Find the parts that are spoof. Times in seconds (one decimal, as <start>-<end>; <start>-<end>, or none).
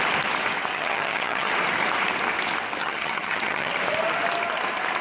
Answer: 0.7-1.5; 2.8-3.7